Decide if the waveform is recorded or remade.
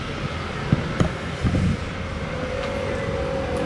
recorded